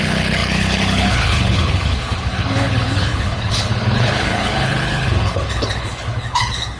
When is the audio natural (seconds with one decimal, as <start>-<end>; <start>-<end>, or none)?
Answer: none